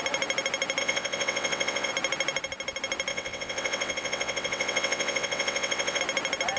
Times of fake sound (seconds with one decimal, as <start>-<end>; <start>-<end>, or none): 0.8-1.9; 3.1-6.0

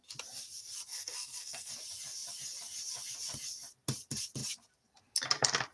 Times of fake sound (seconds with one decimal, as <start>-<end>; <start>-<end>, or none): 0.9-1.7

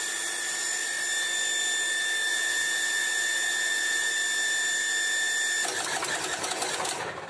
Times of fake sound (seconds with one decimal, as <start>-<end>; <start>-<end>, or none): 2.3-4.1

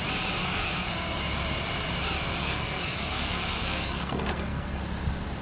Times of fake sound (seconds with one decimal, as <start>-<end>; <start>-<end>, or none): 0.4-1.2; 2.4-4.8

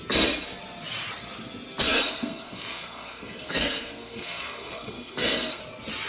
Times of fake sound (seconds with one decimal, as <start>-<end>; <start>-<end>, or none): 1.9-5.6

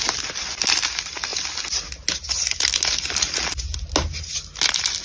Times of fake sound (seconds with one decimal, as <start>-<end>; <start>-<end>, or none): none

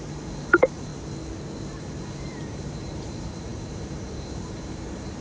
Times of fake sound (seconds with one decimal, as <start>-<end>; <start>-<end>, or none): 0.0-0.9; 1.8-5.2

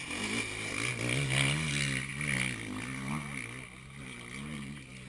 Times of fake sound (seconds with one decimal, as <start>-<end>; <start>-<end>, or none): none